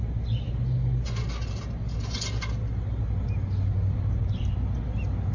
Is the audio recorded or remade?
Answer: recorded